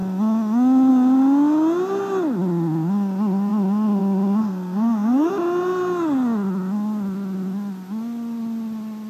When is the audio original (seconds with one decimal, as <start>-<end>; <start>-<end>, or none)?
0.0-4.4; 5.3-9.1

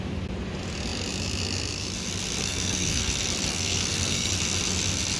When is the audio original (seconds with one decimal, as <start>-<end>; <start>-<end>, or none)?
0.0-2.4; 3.1-3.5; 4.3-5.2